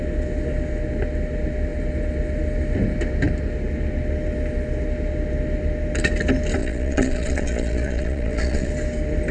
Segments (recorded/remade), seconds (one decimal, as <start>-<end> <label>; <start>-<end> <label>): 0.0-6.6 recorded; 6.6-8.7 remade; 8.7-9.3 recorded